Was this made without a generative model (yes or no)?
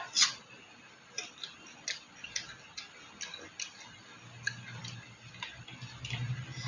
yes